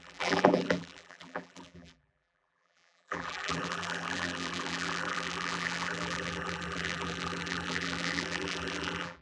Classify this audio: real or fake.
fake